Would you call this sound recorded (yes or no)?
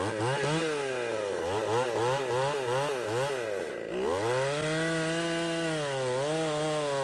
yes